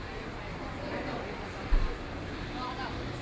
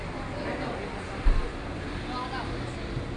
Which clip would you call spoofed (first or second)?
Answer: first